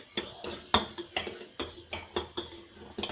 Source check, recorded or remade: recorded